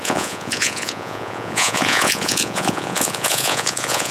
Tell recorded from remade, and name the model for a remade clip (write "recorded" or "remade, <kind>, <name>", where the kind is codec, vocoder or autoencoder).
remade, vocoder, Vocos